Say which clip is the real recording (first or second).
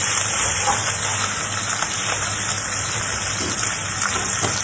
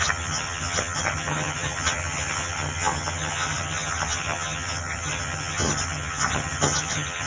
first